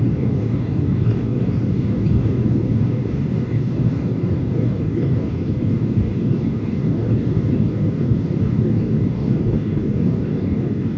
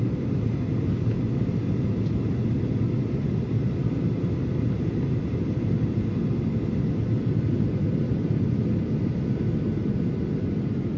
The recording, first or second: second